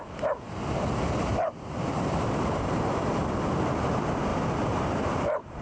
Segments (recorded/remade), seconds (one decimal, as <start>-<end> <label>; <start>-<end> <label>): 0.0-1.3 recorded; 1.3-2.9 remade; 2.9-4.3 recorded; 4.3-5.6 remade